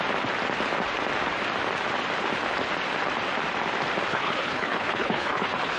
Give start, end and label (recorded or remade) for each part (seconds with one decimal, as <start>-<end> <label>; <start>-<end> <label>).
0.0-4.1 recorded; 4.1-5.8 remade